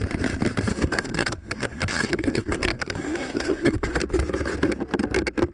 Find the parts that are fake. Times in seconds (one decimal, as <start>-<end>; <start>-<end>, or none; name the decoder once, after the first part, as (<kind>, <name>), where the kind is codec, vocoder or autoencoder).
0.7-4.0 (codec, SNAC)